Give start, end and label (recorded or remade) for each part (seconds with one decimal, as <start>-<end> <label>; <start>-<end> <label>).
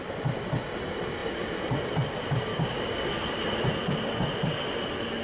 0.0-2.5 recorded; 2.5-3.4 remade; 3.4-5.2 recorded